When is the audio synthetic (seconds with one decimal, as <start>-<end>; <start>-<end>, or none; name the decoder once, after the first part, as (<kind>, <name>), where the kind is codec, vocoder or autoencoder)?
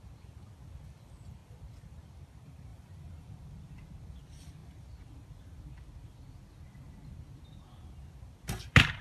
2.7-3.3 (vocoder, BigVGAN v2)